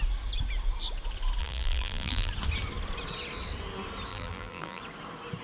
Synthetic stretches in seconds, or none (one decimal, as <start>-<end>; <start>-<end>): 1.4-2.3; 4.1-4.8